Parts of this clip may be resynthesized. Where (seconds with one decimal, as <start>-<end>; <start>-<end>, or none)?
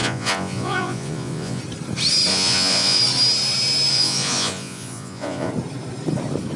0.0-1.6; 2.3-3.0; 3.9-5.5